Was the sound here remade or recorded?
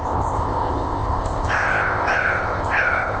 remade